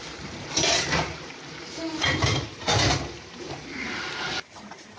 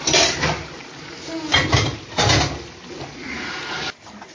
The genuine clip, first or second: second